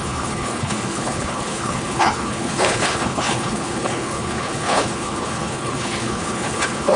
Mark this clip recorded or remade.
remade